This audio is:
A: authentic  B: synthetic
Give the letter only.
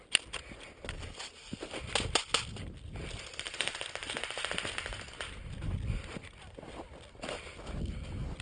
A